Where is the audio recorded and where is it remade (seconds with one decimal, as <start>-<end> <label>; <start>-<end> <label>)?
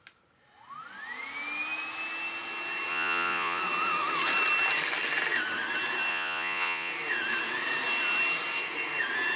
0.0-2.9 recorded; 2.9-3.6 remade; 3.6-6.1 recorded; 6.1-6.9 remade; 6.9-9.4 recorded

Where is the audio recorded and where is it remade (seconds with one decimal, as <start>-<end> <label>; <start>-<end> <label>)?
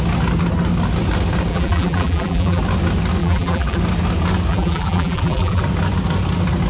0.0-1.5 recorded; 1.5-2.6 remade; 2.6-3.2 recorded; 3.2-3.8 remade; 3.8-4.5 recorded; 4.5-5.6 remade; 5.6-6.7 recorded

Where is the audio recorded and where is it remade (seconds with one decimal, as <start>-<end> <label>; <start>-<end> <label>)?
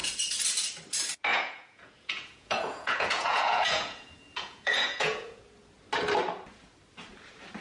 0.0-1.3 recorded; 1.3-5.4 remade; 5.4-7.6 recorded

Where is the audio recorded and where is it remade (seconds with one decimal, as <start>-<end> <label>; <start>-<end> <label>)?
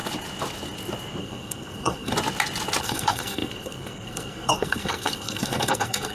0.0-1.2 recorded; 1.2-2.1 remade; 2.1-2.8 recorded; 2.8-6.1 remade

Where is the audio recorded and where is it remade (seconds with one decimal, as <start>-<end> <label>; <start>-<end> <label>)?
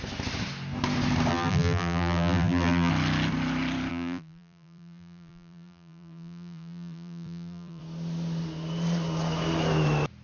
0.0-1.3 recorded; 1.3-2.9 remade; 2.9-3.9 recorded; 3.9-7.8 remade; 7.8-10.2 recorded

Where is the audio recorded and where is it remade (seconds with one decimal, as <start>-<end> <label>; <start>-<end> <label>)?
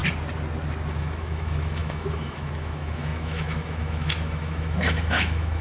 0.0-0.9 recorded; 0.9-5.6 remade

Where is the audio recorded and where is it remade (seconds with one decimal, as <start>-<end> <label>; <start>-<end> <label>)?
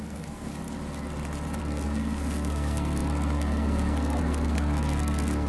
0.0-0.5 remade; 0.5-1.6 recorded; 1.6-5.5 remade